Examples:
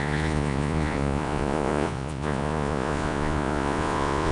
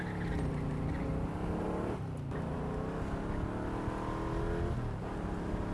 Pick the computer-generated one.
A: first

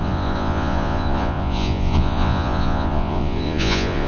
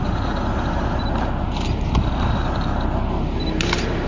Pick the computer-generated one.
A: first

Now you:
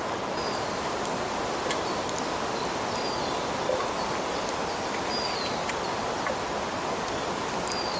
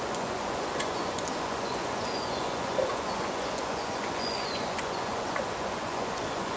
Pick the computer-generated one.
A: second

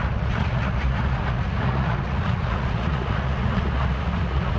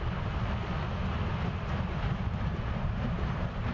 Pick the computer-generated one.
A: first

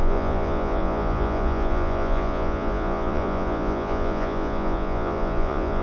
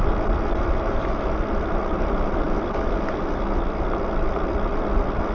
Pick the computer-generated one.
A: first